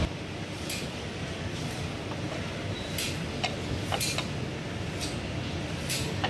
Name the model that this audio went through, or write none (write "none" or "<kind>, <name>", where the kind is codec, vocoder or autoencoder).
none